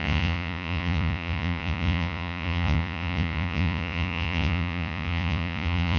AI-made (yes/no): yes